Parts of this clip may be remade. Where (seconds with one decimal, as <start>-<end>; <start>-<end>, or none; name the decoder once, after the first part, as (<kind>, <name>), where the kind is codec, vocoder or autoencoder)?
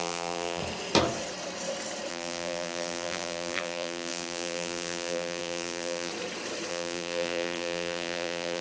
0.0-0.6 (vocoder, BigVGAN v2); 2.1-6.1; 6.7-8.6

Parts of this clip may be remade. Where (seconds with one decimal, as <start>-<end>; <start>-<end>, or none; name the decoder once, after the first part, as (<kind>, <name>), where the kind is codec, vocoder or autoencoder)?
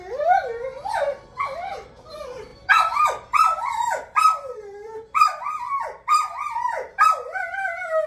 2.5-7.4 (vocoder, BigVGAN v2)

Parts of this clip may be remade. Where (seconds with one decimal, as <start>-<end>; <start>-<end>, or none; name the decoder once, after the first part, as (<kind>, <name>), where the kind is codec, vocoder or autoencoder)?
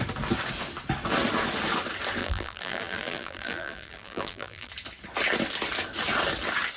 2.2-4.7 (vocoder, BigVGAN v2)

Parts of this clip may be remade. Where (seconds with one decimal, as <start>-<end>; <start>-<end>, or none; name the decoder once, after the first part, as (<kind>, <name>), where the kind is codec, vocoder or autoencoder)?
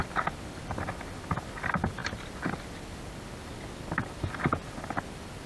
0.0-5.5 (vocoder, BigVGAN v2)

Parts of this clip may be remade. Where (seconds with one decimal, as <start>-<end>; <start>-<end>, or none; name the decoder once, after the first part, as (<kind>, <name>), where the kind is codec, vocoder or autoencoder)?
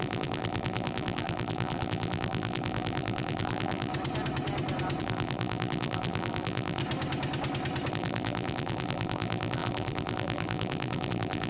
0.0-3.9 (vocoder, BigVGAN v2); 5.0-6.8; 7.9-11.5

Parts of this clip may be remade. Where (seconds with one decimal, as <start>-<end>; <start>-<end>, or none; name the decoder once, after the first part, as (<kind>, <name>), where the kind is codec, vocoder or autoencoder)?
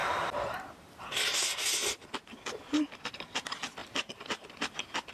3.8-5.1 (vocoder, BigVGAN v2)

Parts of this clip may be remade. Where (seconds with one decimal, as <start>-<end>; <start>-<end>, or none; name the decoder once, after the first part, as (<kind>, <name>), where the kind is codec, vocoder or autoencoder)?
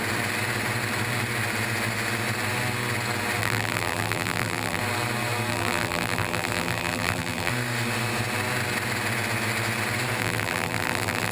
3.4-4.8 (vocoder, BigVGAN v2); 5.5-7.5; 10.2-11.3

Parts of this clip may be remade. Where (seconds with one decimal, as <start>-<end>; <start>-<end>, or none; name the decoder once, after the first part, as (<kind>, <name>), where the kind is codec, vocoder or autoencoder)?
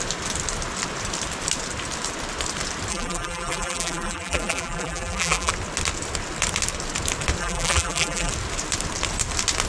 2.9-5.5 (vocoder, BigVGAN v2); 7.4-8.3